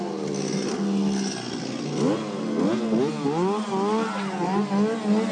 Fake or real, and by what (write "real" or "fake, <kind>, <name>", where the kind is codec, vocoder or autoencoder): real